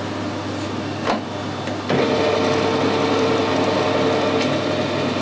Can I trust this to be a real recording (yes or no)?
yes